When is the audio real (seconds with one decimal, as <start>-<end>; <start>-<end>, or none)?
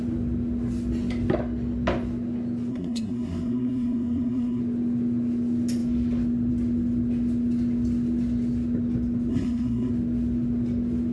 0.0-2.7; 4.6-9.3; 9.9-11.1